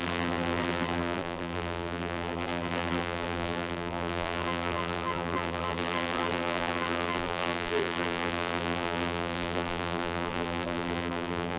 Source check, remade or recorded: remade